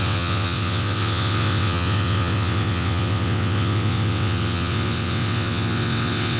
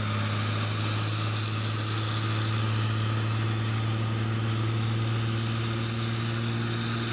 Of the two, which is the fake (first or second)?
first